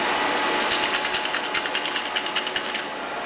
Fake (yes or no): no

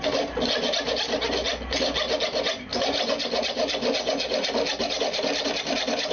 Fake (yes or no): no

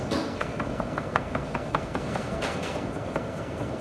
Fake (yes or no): yes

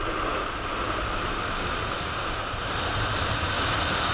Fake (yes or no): no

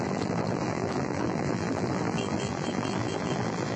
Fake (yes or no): yes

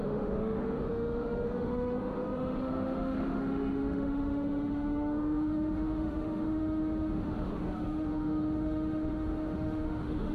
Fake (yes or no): yes